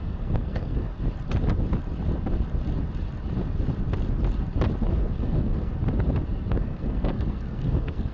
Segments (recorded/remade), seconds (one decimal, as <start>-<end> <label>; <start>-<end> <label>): 0.0-0.9 remade; 0.9-4.9 recorded; 4.9-5.7 remade; 5.7-6.5 recorded; 6.5-8.1 remade